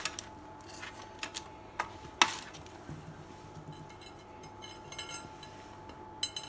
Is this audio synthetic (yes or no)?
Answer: no